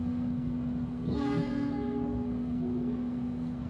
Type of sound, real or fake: fake